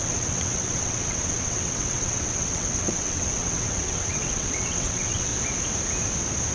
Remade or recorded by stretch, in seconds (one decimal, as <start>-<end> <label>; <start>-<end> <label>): 0.0-5.3 remade; 5.3-6.5 recorded